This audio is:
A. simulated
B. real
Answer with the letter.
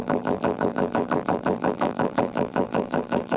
A